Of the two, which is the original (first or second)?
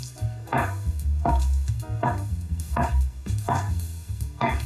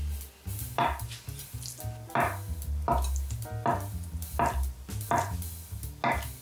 second